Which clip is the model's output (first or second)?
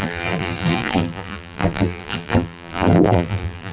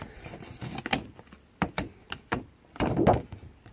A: first